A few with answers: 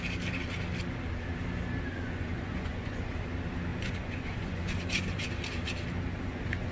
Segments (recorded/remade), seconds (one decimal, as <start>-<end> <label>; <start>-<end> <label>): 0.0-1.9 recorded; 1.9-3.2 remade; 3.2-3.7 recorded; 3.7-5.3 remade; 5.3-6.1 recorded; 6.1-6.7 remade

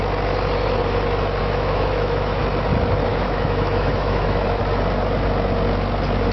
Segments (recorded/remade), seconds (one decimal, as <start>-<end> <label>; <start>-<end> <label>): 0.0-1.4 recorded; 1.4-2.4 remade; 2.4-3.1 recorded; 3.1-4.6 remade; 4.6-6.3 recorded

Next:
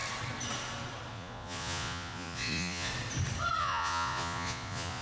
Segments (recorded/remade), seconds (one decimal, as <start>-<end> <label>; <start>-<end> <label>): 0.0-1.1 recorded; 1.1-2.9 remade; 2.9-3.6 recorded; 3.6-5.0 remade